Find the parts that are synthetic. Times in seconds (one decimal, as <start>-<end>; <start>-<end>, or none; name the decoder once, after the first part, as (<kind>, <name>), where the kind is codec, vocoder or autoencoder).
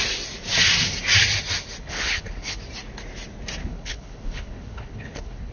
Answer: 1.8-2.6 (codec, HILCodec); 3.6-5.5